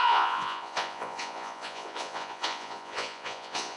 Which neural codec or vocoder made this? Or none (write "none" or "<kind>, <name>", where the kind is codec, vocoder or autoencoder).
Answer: vocoder, Vocos